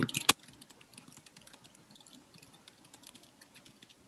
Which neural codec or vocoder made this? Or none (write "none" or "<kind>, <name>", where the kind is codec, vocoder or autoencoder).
none